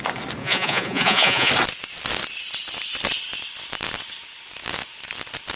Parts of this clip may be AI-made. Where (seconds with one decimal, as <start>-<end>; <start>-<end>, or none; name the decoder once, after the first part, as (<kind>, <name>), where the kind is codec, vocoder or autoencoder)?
0.4-1.5 (vocoder, Vocos)